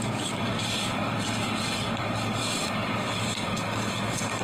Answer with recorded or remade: remade